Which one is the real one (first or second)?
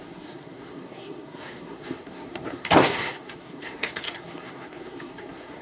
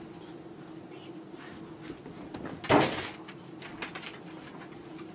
second